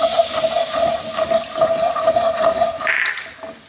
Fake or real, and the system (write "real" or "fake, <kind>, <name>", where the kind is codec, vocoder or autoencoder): real